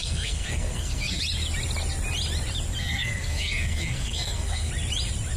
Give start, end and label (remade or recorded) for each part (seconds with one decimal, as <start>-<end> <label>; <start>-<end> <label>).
0.0-1.2 remade; 1.2-2.8 recorded; 2.8-4.7 remade; 4.7-5.4 recorded